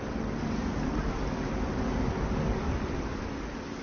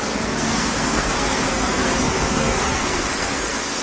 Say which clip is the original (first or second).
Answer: first